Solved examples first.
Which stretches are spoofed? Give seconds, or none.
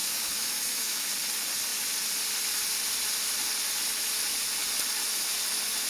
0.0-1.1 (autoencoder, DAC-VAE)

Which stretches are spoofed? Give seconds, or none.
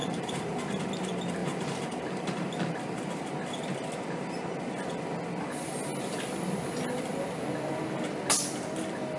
0.0-0.8 (vocoder, BigVGAN v2); 1.4-3.2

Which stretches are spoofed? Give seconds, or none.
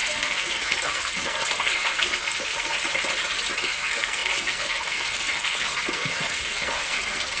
0.0-2.7 (codec, SNAC); 3.6-7.4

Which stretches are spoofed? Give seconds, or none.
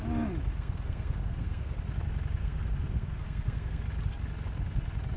0.5-1.8 (codec, SNAC); 2.4-3.8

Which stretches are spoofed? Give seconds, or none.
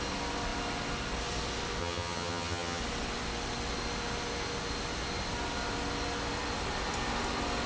1.8-2.8 (vocoder, HiFi-GAN)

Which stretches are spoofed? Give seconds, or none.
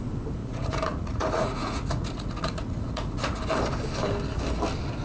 0.4-3.4 (vocoder, Vocos)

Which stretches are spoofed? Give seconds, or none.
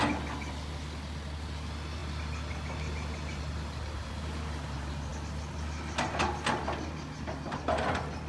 none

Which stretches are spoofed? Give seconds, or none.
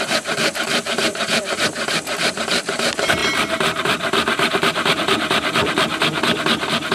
0.0-5.9 (vocoder, BigVGAN v2)